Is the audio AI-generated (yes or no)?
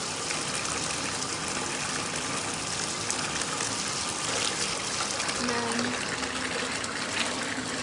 no